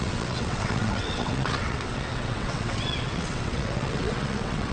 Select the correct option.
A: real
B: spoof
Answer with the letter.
B